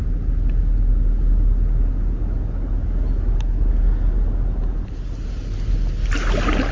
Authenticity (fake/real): real